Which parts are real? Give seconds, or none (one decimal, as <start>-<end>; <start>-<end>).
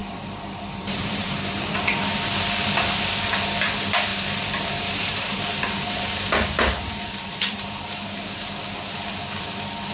2.1-4.1; 8.5-9.9